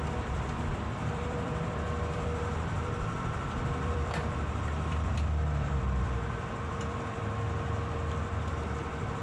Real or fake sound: fake